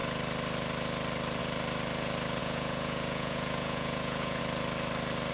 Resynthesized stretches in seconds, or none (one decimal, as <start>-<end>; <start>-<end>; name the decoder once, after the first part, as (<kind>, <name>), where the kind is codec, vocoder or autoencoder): 2.4-4.4 (vocoder, Vocos)